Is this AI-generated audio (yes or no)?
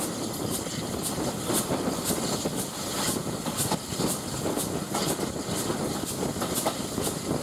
no